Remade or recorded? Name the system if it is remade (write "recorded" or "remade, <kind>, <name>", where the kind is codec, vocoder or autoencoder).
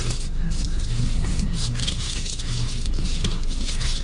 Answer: remade, codec, SNAC